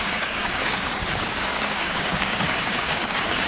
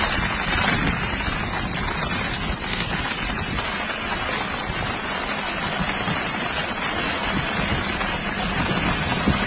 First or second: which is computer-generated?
first